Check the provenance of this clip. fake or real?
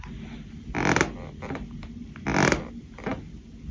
real